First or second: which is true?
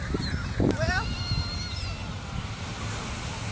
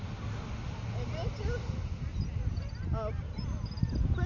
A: second